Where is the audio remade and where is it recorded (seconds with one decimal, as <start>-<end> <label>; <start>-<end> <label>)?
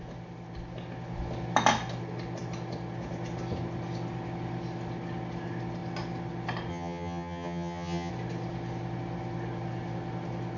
0.0-6.7 recorded; 6.7-8.1 remade; 8.1-10.6 recorded